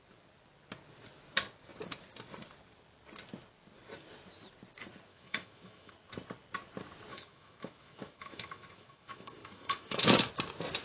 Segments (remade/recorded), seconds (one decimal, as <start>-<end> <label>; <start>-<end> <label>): 0.0-5.1 recorded; 5.1-5.9 remade; 5.9-7.1 recorded; 7.1-10.3 remade; 10.3-10.8 recorded

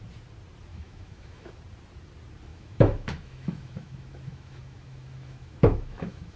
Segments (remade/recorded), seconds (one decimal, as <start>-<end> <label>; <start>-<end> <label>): 0.0-0.7 recorded; 0.7-1.6 remade; 1.6-2.5 recorded; 2.5-6.4 remade

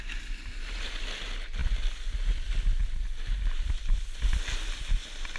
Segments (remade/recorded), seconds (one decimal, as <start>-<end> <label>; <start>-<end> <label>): 0.0-5.4 recorded

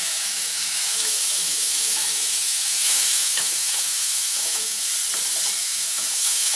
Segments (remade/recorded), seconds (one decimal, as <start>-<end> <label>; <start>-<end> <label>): 0.0-4.9 remade; 4.9-5.6 recorded; 5.6-6.6 remade

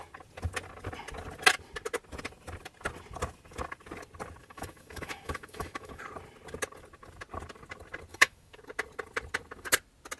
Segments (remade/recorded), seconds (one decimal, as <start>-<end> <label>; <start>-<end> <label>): 0.0-4.4 recorded; 4.4-6.0 remade; 6.0-8.1 recorded; 8.1-8.6 remade; 8.6-10.2 recorded

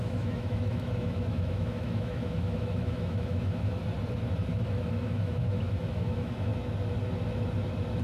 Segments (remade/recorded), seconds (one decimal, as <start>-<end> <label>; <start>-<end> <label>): 0.0-3.8 remade; 3.8-4.5 recorded; 4.5-6.5 remade; 6.5-8.0 recorded